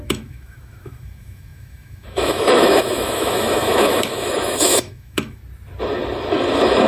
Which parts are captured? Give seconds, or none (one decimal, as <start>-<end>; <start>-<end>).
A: 5.4-6.9